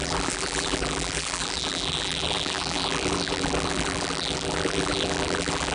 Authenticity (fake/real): fake